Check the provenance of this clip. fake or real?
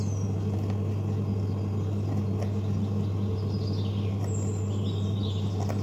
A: real